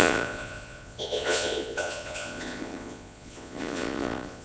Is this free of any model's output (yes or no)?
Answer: no